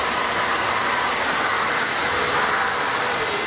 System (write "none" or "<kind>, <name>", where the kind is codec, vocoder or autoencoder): none